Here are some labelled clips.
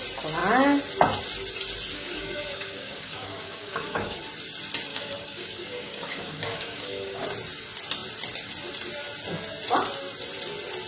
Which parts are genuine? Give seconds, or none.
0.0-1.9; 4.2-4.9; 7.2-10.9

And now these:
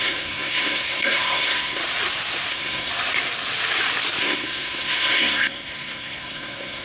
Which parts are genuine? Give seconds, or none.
1.8-2.5; 2.9-4.2